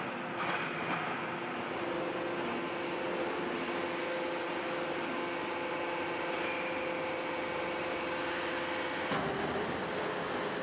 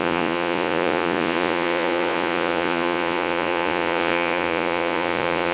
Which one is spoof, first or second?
second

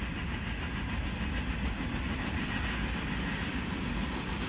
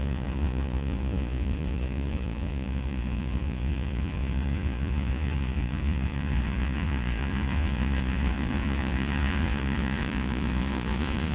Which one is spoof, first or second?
second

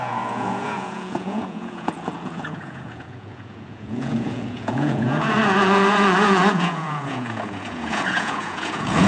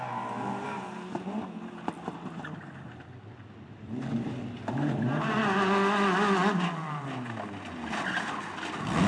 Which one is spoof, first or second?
first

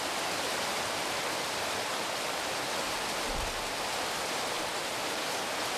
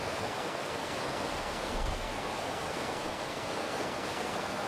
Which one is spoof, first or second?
second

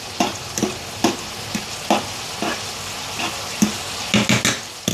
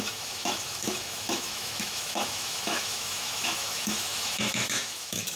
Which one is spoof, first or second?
second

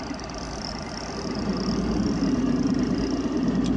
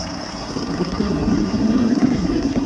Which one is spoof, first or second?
second